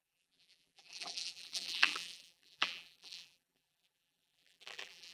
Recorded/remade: remade